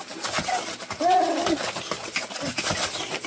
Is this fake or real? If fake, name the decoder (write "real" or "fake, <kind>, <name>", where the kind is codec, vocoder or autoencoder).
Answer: real